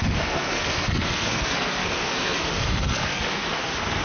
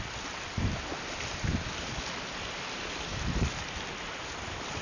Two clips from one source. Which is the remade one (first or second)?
first